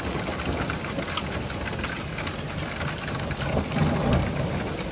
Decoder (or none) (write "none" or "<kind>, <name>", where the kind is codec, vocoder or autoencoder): none